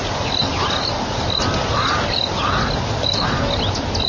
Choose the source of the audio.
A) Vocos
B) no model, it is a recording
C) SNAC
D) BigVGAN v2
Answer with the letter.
B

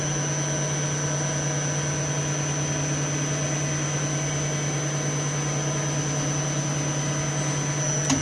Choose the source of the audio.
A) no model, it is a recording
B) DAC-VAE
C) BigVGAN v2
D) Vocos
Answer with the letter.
A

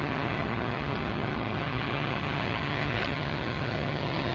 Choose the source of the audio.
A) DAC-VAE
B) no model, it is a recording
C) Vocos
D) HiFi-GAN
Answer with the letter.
D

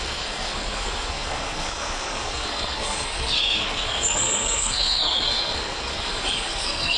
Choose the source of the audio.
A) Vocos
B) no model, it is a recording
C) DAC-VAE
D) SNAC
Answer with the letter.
D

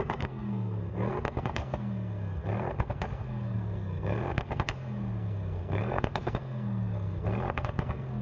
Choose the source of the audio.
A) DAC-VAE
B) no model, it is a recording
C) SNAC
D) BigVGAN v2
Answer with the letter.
C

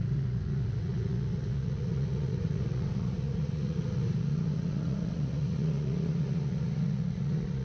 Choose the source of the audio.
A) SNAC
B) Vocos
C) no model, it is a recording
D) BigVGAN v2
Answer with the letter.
B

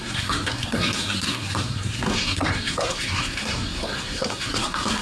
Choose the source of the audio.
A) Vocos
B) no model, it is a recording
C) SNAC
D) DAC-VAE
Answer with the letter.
C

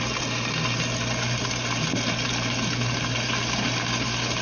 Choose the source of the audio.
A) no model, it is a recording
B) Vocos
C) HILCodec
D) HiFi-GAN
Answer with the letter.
A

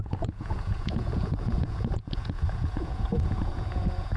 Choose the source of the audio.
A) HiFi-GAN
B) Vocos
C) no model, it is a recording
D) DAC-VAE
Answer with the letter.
B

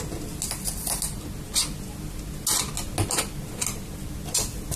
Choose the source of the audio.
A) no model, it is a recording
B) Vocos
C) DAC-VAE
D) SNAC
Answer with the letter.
A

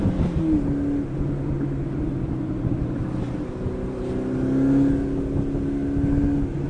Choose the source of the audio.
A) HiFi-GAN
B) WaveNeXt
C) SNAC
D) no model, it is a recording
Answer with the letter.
D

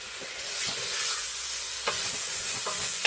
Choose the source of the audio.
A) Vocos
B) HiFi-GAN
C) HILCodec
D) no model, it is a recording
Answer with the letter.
A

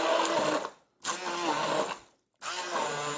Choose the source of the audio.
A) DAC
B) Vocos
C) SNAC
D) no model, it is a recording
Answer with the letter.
D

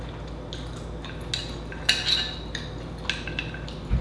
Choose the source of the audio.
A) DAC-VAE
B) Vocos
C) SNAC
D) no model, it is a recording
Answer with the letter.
D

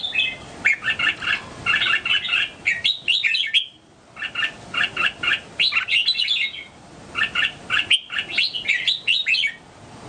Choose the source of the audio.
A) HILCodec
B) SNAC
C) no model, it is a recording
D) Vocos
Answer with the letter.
C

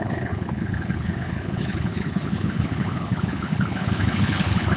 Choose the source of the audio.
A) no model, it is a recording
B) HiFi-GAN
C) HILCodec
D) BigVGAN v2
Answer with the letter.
C